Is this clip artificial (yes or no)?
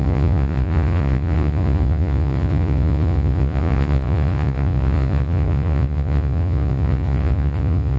yes